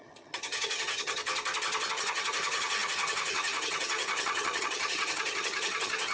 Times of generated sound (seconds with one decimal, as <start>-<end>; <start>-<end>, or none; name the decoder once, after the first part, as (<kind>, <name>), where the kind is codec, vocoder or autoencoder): 0.0-1.2 (vocoder, HiFi-GAN); 1.9-6.1